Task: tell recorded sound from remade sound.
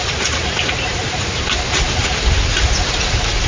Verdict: recorded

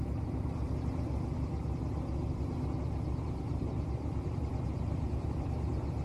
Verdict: remade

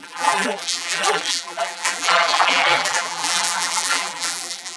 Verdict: remade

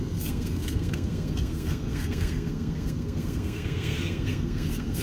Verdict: remade